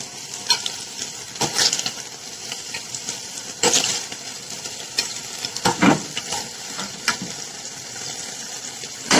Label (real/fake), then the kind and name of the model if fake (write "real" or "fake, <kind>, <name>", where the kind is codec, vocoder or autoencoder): fake, vocoder, BigVGAN v2